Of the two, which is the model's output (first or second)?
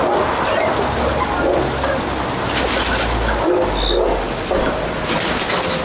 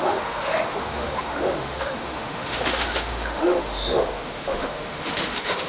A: second